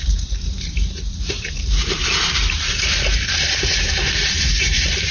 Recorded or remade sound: remade